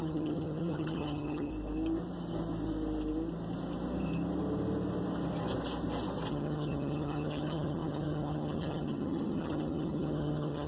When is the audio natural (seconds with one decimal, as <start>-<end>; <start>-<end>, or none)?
1.5-6.3